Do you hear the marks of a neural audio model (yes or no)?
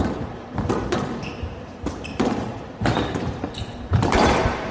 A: yes